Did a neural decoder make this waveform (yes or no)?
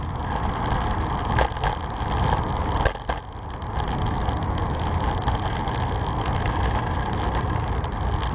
no